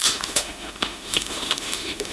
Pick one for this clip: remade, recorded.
remade